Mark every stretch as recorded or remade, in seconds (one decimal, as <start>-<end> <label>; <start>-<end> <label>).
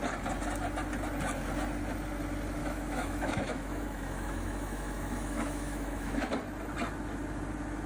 0.0-2.6 recorded; 2.6-6.3 remade; 6.3-7.9 recorded